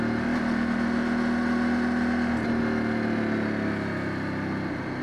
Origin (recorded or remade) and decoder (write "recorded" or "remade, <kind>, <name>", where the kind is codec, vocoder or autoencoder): recorded